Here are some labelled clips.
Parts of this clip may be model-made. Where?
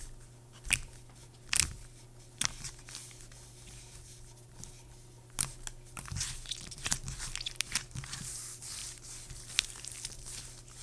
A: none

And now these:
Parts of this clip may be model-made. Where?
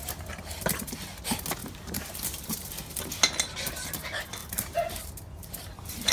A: 1.6-2.7 (vocoder, BigVGAN v2); 4.4-4.9; 5.4-6.1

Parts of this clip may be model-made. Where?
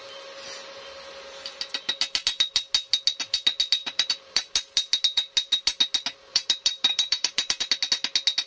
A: 3.8-4.5 (vocoder, BigVGAN v2); 6.3-7.7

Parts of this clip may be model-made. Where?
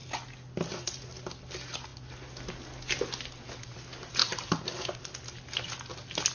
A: 4.2-5.0 (vocoder, BigVGAN v2)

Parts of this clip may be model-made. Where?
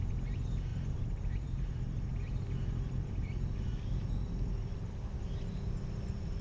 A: 0.7-2.2 (vocoder, BigVGAN v2); 3.2-4.5